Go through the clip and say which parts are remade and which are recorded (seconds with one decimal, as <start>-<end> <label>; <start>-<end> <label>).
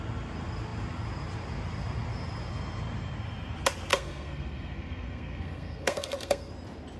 0.0-3.9 recorded; 3.9-6.5 remade; 6.5-7.0 recorded